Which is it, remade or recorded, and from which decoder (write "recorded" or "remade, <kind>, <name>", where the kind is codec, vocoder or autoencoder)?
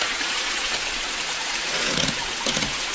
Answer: remade, vocoder, Vocos